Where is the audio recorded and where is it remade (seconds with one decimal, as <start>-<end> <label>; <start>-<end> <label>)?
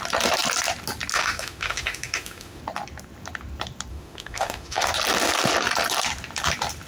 0.0-1.1 recorded; 1.1-2.6 remade; 2.6-3.9 recorded; 3.9-4.9 remade; 4.9-6.9 recorded